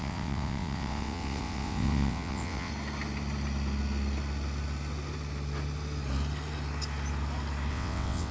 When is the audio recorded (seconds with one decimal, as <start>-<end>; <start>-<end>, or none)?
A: 2.7-7.7